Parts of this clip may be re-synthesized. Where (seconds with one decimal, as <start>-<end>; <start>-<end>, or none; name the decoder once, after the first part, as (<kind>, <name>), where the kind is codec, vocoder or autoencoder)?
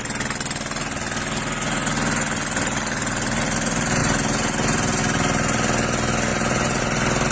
4.0-5.0 (vocoder, BigVGAN v2); 6.3-6.8